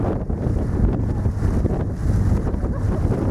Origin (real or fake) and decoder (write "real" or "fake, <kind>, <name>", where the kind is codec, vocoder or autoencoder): real